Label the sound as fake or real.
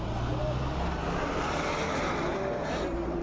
real